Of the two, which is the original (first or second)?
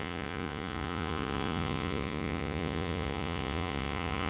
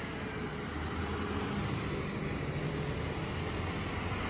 second